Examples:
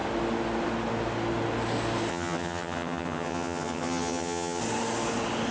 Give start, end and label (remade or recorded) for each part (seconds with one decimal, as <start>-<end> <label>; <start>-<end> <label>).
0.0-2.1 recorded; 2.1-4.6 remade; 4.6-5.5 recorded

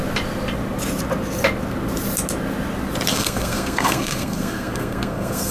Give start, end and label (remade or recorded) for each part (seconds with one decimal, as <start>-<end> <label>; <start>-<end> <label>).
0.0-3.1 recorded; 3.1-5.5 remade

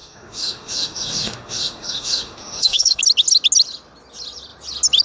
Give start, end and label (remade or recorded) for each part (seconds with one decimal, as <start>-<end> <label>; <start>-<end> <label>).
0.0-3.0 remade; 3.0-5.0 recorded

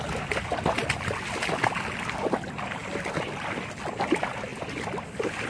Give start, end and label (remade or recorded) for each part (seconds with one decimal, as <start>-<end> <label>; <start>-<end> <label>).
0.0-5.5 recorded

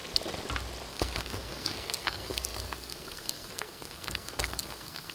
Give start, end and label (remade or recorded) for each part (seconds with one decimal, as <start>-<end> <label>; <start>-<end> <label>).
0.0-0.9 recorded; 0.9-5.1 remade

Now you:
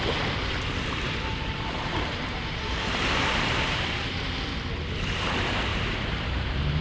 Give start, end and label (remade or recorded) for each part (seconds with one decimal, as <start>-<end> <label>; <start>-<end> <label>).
0.0-1.3 recorded; 1.3-4.1 remade; 4.1-5.7 recorded; 5.7-6.8 remade

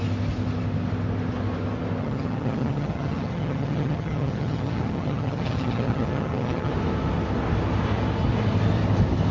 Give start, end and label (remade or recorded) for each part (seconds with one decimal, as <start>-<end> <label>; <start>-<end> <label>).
0.0-2.0 recorded; 2.0-6.7 remade; 6.7-9.3 recorded